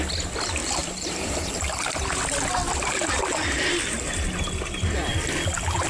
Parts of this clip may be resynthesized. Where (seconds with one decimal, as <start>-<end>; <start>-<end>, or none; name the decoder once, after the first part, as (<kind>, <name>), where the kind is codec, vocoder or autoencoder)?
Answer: 0.6-1.5 (vocoder, BigVGAN v2)